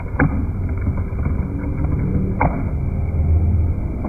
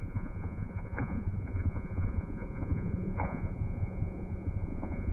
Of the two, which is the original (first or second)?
first